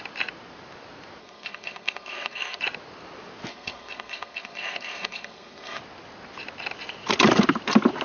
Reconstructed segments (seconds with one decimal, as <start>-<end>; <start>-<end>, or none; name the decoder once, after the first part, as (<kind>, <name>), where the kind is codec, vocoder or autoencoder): 1.2-2.6 (codec, SNAC); 3.5-5.8